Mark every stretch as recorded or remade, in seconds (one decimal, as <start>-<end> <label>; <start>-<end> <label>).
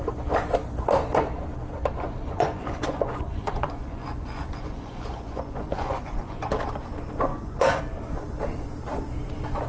0.0-2.2 recorded; 2.2-6.4 remade; 6.4-7.3 recorded; 7.3-7.8 remade; 7.8-9.7 recorded